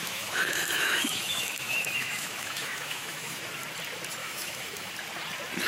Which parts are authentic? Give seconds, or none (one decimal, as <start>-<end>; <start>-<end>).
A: 3.4-4.2; 4.9-5.7